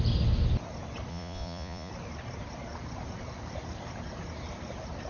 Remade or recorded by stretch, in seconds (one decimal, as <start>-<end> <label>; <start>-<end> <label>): 0.0-1.1 recorded; 1.1-1.9 remade; 1.9-5.1 recorded